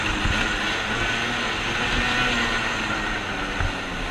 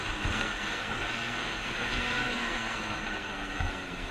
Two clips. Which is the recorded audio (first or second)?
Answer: first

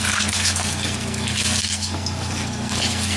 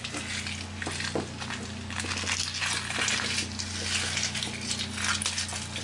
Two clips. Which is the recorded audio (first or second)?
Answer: second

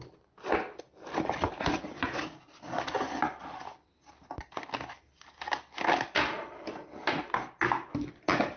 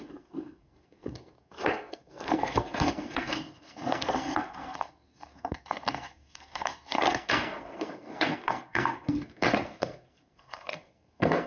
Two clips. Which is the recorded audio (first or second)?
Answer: first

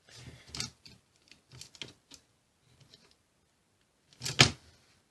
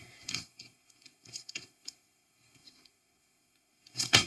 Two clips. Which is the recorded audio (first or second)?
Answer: first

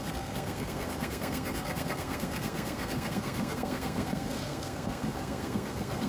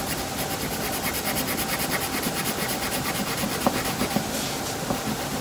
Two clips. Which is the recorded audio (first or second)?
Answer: second